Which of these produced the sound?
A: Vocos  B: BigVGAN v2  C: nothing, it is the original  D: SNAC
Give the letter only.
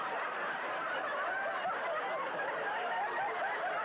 C